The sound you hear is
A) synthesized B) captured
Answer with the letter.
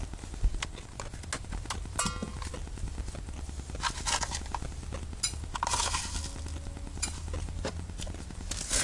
B